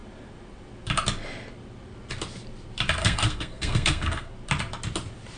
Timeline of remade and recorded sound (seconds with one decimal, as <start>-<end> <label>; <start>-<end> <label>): 0.0-3.0 recorded; 3.0-4.3 remade; 4.3-5.4 recorded